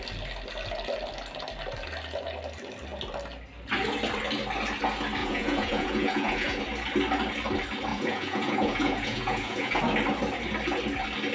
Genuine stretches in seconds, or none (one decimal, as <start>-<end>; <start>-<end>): 0.0-5.2; 6.6-7.9; 9.8-11.3